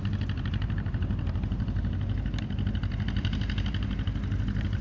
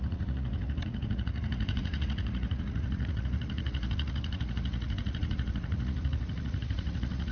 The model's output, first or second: second